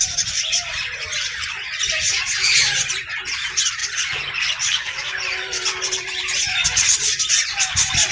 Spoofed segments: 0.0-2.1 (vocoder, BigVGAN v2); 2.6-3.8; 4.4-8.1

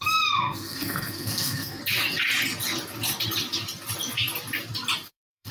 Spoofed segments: 0.0-1.8 (codec, SNAC); 5.1-5.5

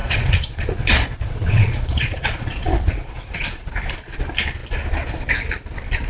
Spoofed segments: 0.0-3.7 (vocoder, Vocos)

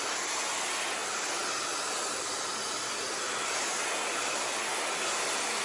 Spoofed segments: none

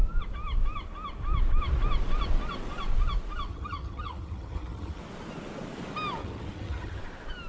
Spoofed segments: 3.5-5.0 (vocoder, HiFi-GAN); 6.2-7.0